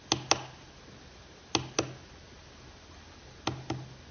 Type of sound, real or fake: real